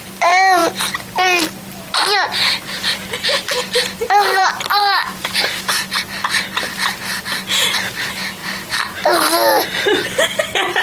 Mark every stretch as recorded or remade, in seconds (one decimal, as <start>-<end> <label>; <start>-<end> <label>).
0.0-4.4 recorded; 4.4-5.8 remade; 5.8-8.4 recorded; 8.4-10.4 remade; 10.4-10.8 recorded